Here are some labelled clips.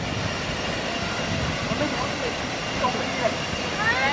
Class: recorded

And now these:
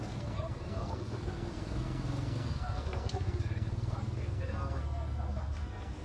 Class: remade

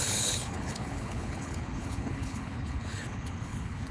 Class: remade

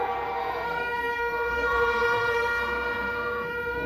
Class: remade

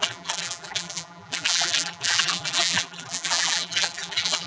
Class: remade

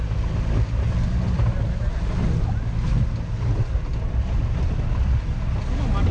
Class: recorded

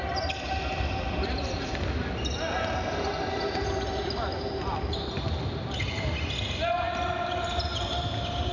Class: recorded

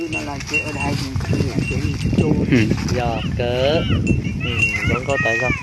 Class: recorded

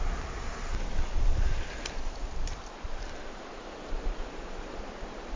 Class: remade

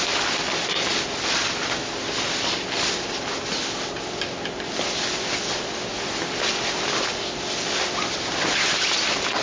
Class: recorded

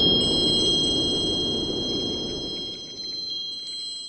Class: recorded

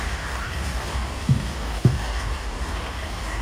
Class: remade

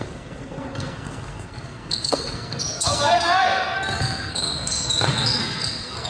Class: remade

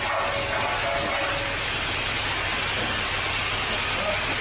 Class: recorded